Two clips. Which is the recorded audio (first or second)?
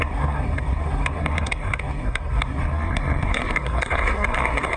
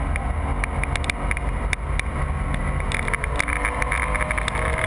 second